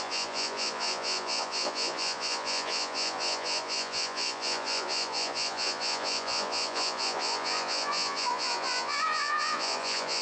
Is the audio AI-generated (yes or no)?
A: yes